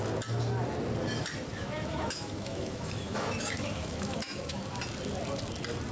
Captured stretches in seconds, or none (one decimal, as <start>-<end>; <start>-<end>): 0.0-1.5; 4.6-5.9